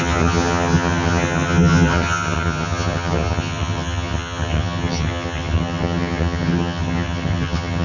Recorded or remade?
remade